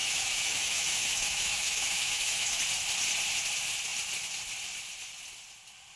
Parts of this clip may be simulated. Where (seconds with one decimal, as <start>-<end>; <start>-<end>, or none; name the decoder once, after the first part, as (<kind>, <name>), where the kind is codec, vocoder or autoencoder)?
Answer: 0.0-2.6 (autoencoder, DAC-VAE)